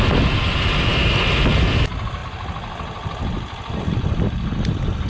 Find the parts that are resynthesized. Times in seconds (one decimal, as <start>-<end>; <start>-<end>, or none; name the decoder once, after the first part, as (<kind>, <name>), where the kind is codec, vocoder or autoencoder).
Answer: none